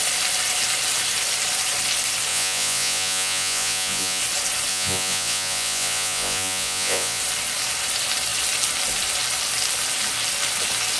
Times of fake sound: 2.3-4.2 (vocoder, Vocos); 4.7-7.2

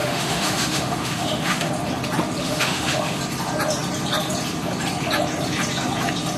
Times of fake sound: 0.0-1.7 (autoencoder, DAC-VAE); 2.4-3.2

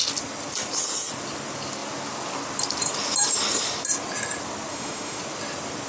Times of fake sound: 4.7-5.2 (autoencoder, DAC-VAE)

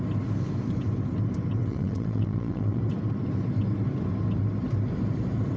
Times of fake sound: 1.6-2.8 (vocoder, WaveNeXt)

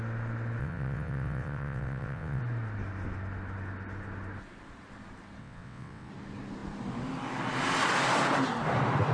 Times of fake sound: 0.6-2.4 (vocoder, WaveNeXt); 5.4-6.1

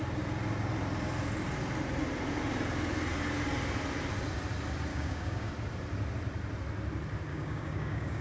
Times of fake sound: 4.9-5.5 (codec, DAC); 7.3-8.2

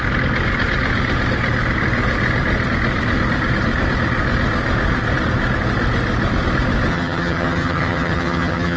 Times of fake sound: 6.9-8.8 (vocoder, HiFi-GAN)